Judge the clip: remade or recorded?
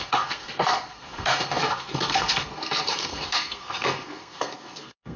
remade